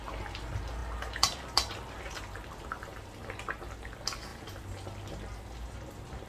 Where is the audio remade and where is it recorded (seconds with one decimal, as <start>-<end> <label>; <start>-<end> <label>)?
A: 0.0-6.3 recorded